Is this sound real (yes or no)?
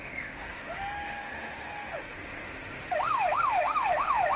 no